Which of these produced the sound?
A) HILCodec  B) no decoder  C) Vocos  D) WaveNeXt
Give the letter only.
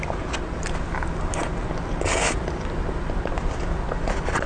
B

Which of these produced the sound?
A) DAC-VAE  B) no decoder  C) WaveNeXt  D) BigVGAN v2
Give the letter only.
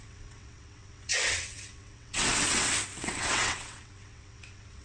C